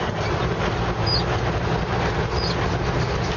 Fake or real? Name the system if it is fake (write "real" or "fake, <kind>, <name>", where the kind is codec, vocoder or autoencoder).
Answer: real